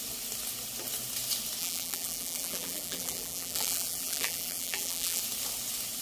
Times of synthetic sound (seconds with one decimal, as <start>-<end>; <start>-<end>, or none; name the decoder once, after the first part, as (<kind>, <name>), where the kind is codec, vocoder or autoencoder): 1.6-5.2 (vocoder, BigVGAN v2)